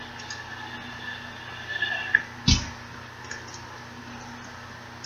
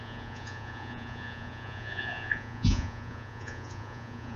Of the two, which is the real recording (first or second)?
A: first